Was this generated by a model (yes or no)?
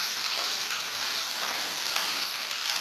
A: yes